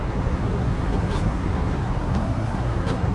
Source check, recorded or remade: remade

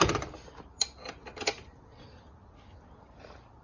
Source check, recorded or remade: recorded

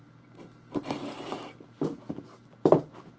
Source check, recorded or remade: recorded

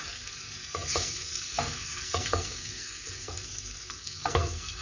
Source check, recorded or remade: remade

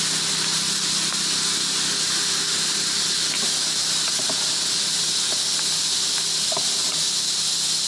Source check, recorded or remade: recorded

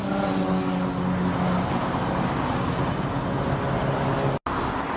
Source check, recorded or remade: recorded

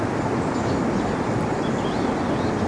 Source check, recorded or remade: recorded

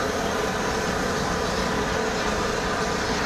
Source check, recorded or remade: recorded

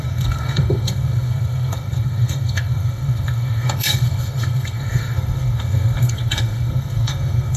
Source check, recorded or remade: remade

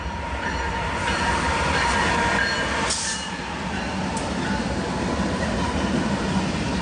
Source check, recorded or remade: recorded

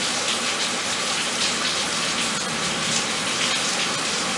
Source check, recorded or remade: recorded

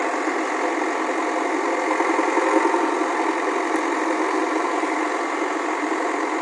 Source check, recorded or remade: recorded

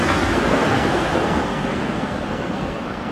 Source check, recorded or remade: remade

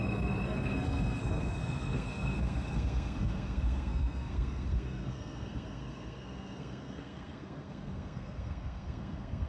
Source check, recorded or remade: remade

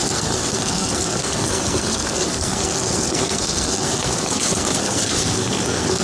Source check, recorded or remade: remade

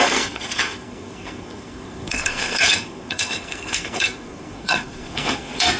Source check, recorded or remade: remade